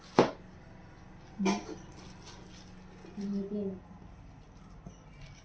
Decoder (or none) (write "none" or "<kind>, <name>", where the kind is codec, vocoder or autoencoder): none